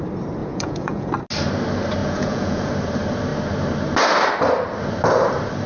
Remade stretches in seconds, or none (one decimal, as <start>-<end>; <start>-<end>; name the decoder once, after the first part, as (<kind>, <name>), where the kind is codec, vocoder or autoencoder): 0.4-1.1 (vocoder, Vocos); 2.0-2.7